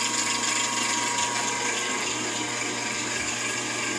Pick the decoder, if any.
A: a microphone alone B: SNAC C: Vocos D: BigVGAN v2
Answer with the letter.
A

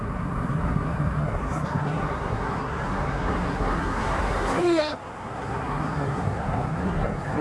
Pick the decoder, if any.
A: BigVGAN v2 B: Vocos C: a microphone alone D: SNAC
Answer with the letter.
D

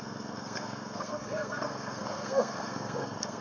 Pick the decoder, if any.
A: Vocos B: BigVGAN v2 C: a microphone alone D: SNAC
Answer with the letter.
D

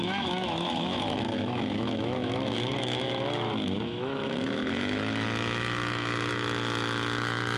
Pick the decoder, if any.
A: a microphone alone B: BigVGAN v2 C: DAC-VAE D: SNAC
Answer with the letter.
C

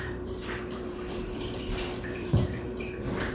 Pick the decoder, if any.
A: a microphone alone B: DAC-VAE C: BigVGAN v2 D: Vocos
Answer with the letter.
C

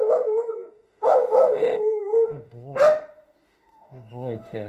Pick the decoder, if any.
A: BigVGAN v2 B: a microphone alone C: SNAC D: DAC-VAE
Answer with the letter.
D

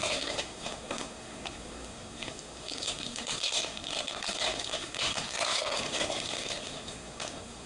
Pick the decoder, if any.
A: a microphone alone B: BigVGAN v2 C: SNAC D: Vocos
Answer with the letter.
C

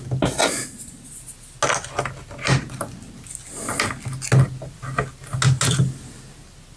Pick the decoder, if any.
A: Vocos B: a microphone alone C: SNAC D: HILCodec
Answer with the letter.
B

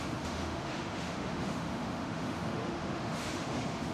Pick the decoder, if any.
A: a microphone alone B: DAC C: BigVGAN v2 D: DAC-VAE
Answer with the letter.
D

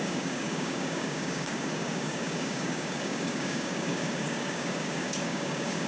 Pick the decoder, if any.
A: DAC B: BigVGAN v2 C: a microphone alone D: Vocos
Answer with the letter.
A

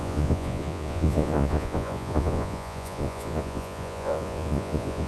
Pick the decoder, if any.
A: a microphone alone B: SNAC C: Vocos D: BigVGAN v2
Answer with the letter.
C